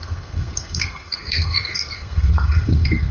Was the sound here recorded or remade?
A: remade